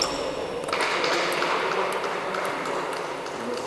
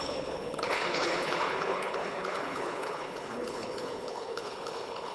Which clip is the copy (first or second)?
second